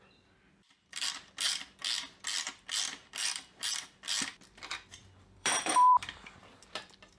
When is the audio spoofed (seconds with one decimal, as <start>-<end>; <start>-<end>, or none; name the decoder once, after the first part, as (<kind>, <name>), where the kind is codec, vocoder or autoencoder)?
0.0-1.8 (vocoder, BigVGAN v2); 2.4-7.2